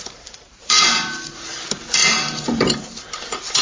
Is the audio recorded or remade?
remade